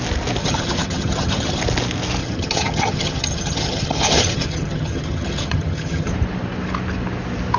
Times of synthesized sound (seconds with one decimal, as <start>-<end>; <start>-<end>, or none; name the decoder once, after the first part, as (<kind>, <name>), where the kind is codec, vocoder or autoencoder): 0.4-1.6 (vocoder, HiFi-GAN); 2.2-6.1